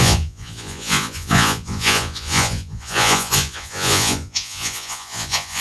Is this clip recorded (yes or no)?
no